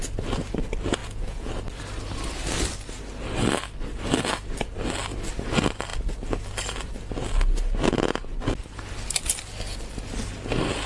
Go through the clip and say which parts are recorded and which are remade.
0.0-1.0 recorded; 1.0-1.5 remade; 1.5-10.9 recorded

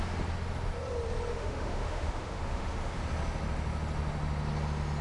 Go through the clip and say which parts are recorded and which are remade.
0.0-1.3 recorded; 1.3-3.0 remade; 3.0-5.0 recorded

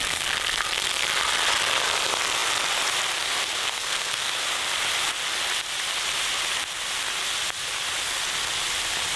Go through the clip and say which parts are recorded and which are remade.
0.0-3.6 recorded; 3.6-4.3 remade; 4.3-9.2 recorded